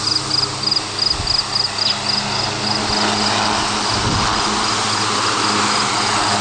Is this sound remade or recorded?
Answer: recorded